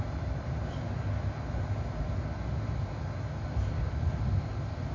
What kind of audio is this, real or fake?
real